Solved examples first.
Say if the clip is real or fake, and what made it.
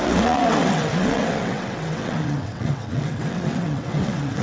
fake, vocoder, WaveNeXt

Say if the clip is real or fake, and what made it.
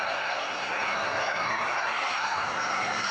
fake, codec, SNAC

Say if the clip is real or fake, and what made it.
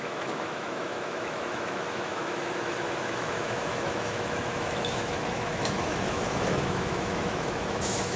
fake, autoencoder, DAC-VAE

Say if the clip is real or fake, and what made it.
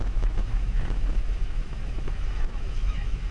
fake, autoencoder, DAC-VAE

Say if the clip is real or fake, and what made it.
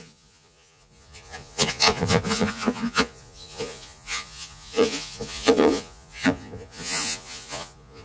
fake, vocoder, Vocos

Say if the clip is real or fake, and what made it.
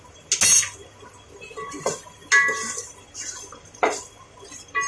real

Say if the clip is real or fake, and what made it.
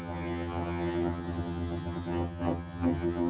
fake, vocoder, HiFi-GAN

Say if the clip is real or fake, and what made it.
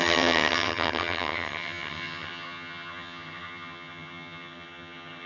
fake, vocoder, HiFi-GAN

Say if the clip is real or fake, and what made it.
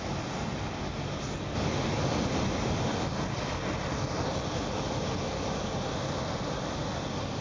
real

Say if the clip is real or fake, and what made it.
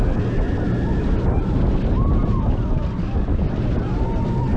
real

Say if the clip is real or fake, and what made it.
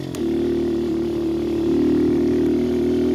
real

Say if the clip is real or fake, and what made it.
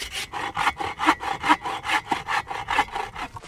real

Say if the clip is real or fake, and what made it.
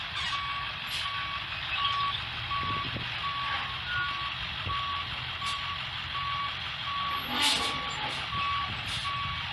real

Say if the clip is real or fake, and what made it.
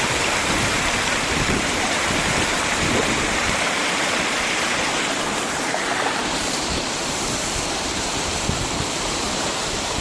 fake, vocoder, BigVGAN v2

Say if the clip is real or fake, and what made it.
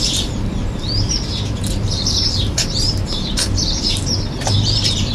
fake, vocoder, BigVGAN v2